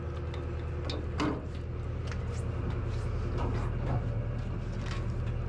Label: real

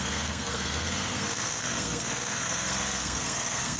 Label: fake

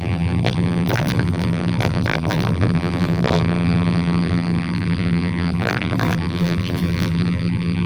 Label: fake